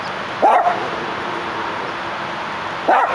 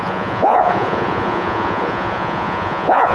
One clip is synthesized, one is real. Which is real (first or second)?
first